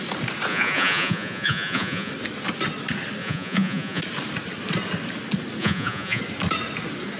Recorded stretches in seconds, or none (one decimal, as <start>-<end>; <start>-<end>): 0.0-0.5; 2.1-3.2; 4.0-5.6; 6.2-7.2